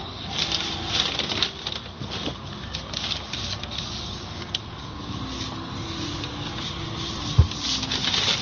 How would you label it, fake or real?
real